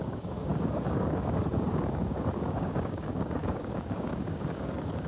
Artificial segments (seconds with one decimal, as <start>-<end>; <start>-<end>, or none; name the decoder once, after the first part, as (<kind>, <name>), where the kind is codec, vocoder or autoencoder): 0.0-5.1 (codec, DAC)